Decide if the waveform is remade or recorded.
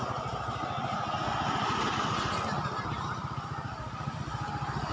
recorded